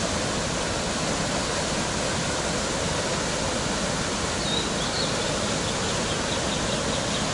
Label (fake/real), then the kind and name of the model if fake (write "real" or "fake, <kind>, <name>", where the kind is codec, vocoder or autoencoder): real